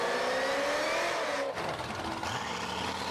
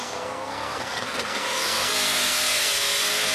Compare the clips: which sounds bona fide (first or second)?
first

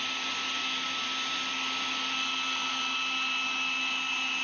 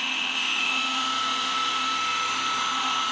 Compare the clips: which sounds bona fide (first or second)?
first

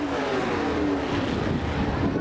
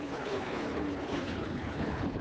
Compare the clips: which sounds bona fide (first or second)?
first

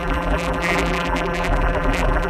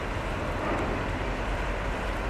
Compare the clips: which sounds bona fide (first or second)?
second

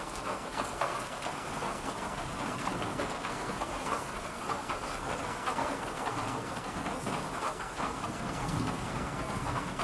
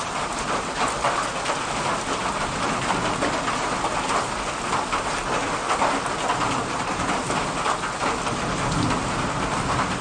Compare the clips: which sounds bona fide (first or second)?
second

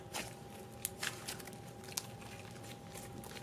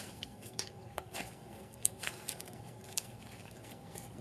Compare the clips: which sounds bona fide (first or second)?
first